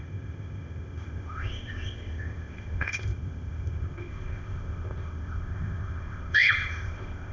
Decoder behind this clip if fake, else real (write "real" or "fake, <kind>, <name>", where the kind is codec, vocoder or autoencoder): fake, codec, ZipCodec